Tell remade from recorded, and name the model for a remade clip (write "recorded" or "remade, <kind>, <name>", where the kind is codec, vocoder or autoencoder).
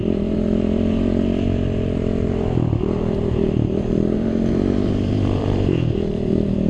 remade, vocoder, BigVGAN v2